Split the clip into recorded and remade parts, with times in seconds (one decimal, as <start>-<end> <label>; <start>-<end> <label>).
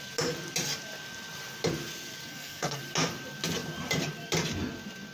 0.0-2.3 recorded; 2.3-2.8 remade; 2.8-5.1 recorded